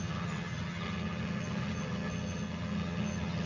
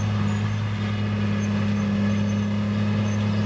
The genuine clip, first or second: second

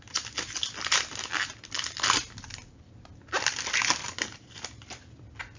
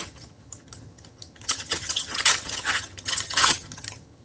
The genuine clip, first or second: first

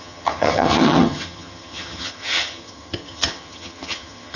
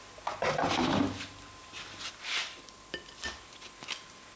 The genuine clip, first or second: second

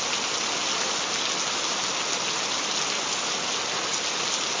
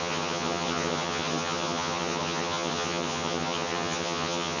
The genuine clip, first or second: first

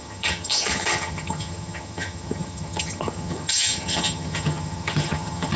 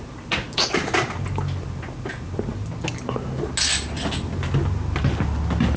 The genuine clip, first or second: second